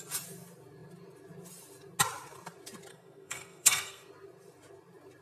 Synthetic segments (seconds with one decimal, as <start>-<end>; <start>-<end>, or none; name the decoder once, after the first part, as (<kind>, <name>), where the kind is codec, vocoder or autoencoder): 2.9-4.1 (codec, SNAC)